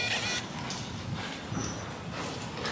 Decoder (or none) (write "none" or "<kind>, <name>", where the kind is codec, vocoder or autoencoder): none